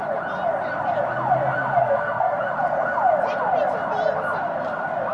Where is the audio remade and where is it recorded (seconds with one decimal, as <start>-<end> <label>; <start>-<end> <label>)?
0.0-1.8 recorded; 1.8-2.4 remade; 2.4-5.1 recorded